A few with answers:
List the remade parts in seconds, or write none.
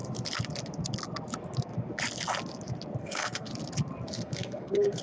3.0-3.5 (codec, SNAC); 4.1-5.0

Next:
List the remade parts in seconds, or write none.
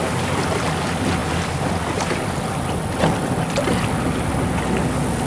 none